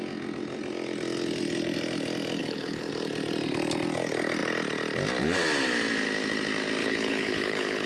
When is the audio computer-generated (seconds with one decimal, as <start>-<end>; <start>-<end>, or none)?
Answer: 2.4-2.9; 6.8-7.9